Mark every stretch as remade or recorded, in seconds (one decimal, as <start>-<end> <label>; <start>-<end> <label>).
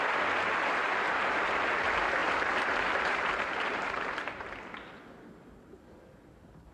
0.0-2.2 recorded; 2.2-4.4 remade; 4.4-6.7 recorded